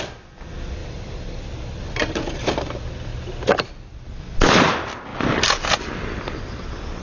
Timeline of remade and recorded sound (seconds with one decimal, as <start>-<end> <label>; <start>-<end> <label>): 0.0-7.0 recorded